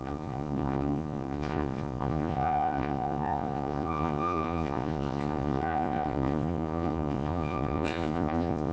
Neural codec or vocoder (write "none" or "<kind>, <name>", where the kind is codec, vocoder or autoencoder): vocoder, Vocos